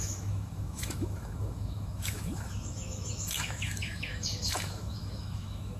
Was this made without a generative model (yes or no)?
no